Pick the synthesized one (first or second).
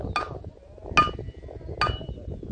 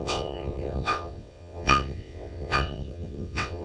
second